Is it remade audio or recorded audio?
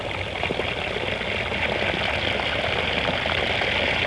recorded